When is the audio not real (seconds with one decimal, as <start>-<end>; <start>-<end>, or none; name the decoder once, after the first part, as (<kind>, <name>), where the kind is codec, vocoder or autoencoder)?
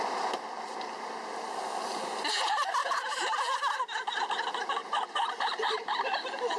2.8-3.6 (vocoder, BigVGAN v2); 4.8-5.6